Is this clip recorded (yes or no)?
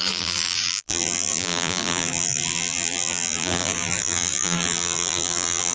no